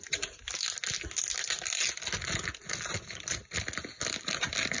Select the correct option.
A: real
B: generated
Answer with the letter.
A